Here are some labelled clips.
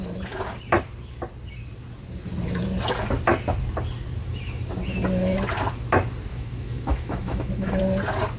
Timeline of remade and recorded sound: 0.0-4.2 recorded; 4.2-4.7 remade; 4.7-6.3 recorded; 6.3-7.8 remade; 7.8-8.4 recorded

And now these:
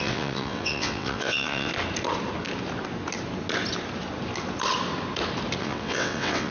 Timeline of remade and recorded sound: 0.0-1.7 remade; 1.7-5.6 recorded; 5.6-6.5 remade

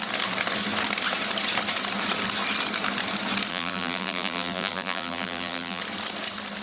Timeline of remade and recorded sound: 0.0-3.5 recorded; 3.5-5.8 remade; 5.8-6.6 recorded